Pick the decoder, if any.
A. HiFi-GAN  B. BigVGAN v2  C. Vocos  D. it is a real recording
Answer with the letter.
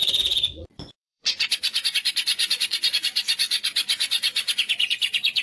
C